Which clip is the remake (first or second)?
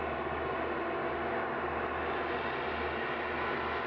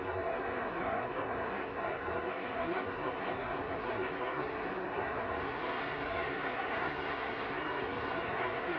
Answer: second